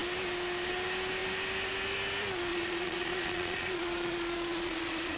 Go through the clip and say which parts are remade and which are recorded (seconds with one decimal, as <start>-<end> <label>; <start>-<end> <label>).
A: 0.0-2.5 recorded; 2.5-5.2 remade